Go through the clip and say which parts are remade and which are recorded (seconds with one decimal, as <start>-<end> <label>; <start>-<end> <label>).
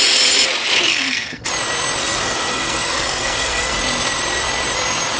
0.0-0.9 recorded; 0.9-1.5 remade; 1.5-2.0 recorded; 2.0-3.8 remade; 3.8-5.2 recorded